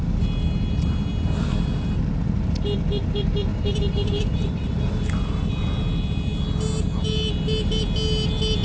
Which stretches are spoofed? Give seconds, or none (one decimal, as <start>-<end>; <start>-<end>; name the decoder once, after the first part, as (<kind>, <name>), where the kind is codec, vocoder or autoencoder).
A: 3.5-5.2 (vocoder, BigVGAN v2)